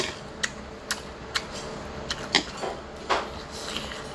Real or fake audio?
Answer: real